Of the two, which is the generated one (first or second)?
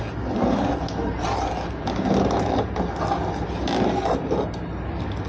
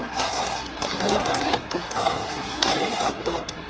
second